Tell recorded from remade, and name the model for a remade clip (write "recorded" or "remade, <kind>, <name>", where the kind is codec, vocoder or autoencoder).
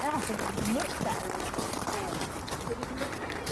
recorded